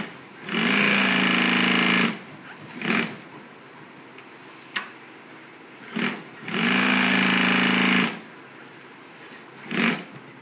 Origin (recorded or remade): recorded